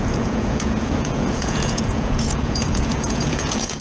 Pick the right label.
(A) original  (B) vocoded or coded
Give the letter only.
B